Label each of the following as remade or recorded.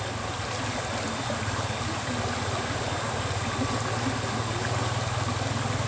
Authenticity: recorded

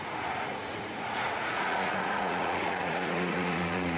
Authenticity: remade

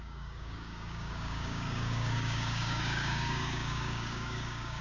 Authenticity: remade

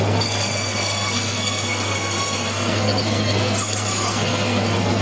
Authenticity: remade